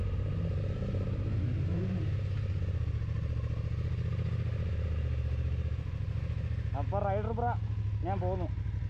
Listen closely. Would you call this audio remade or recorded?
recorded